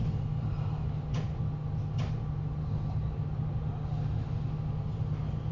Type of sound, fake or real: real